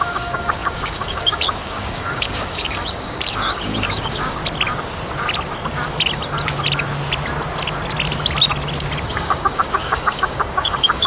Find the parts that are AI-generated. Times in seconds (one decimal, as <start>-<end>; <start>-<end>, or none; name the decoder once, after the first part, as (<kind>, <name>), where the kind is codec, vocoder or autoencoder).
0.0-4.4 (codec, DAC); 9.1-11.1